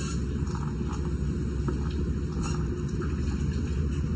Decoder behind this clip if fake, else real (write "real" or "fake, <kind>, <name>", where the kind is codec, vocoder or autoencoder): real